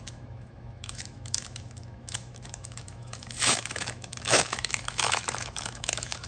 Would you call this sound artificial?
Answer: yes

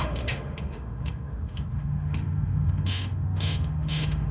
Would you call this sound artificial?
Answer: yes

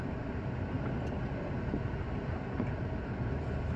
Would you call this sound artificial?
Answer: no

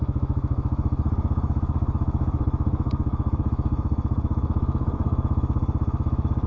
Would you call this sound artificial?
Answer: yes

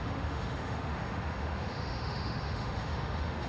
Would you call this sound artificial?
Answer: yes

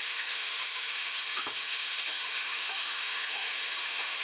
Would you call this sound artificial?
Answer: yes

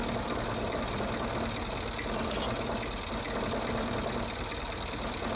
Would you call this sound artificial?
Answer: no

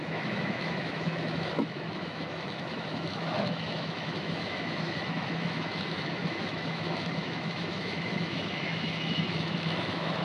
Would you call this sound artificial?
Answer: yes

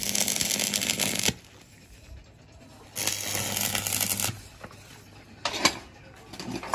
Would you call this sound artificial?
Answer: no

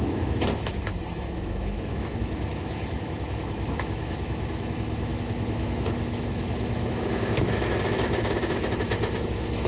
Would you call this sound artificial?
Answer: yes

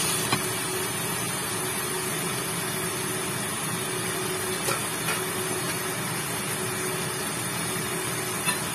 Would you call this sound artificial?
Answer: no